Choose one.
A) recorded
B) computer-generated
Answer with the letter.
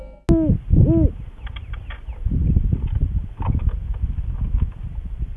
A